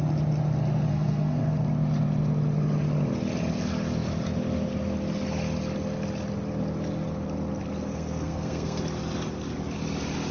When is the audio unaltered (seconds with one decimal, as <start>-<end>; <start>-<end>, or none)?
0.0-0.9; 1.5-7.9; 8.8-10.3